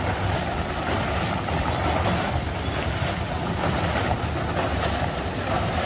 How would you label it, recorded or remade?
recorded